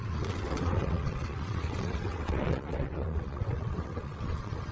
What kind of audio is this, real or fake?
fake